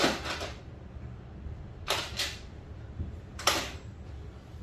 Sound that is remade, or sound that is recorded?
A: remade